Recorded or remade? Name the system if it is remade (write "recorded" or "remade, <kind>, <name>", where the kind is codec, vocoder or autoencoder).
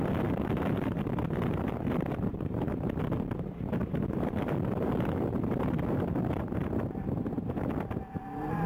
remade, vocoder, BigVGAN v2